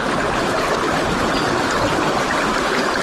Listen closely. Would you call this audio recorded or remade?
recorded